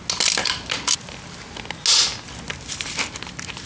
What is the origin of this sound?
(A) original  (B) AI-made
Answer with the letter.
A